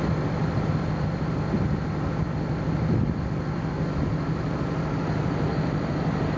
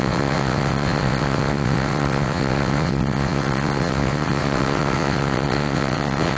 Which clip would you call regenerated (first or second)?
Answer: second